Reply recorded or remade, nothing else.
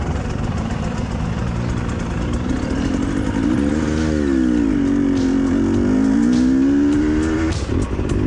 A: recorded